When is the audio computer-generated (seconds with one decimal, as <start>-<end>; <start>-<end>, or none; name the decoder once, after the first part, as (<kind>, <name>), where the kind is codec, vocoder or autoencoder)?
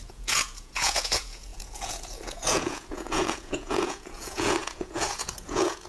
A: 0.0-5.9 (vocoder, Vocos)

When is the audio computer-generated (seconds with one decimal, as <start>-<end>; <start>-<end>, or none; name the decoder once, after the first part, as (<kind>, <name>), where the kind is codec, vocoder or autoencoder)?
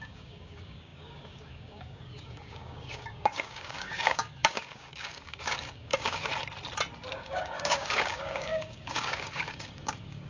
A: 0.0-6.3 (codec, DAC); 7.1-10.3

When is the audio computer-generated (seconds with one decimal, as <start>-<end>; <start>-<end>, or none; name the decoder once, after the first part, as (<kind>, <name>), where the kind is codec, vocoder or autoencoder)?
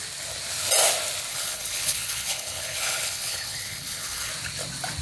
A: 1.3-4.3 (codec, HILCodec)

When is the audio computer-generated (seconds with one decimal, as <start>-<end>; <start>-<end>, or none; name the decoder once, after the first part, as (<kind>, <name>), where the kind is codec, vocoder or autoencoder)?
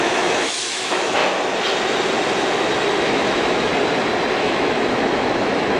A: 0.0-1.2 (autoencoder, DAC-VAE); 3.0-3.7; 4.4-5.8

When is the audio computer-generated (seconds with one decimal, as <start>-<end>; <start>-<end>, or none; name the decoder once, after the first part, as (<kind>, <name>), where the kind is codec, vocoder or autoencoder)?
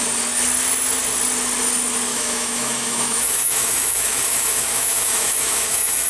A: 2.1-6.1 (autoencoder, DAC-VAE)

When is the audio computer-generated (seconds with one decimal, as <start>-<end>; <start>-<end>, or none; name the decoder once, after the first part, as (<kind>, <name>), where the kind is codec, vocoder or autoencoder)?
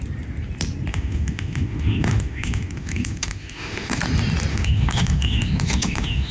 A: 0.9-4.0 (autoencoder, DAC-VAE); 4.5-6.3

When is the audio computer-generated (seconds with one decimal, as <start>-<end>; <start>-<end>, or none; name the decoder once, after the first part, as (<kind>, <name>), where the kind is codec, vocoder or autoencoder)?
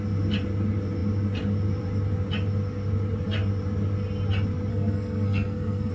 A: 4.7-5.9 (codec, SNAC)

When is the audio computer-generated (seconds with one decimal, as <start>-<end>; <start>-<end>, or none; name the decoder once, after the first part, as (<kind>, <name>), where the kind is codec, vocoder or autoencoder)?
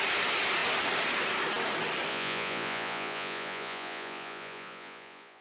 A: 2.1-5.4 (vocoder, Vocos)